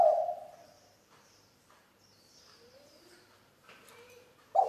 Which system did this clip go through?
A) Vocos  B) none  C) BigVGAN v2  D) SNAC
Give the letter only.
C